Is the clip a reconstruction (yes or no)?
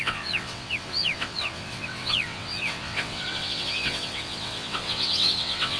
yes